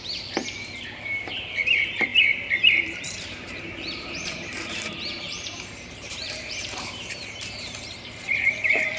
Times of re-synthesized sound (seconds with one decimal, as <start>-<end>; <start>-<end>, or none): 0.0-9.0